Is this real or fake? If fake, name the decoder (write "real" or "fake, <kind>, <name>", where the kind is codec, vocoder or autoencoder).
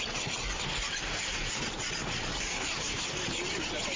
real